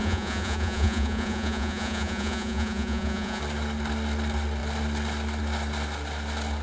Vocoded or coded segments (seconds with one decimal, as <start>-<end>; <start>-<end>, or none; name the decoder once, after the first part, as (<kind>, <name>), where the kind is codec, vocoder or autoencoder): 0.0-3.4 (vocoder, Vocos)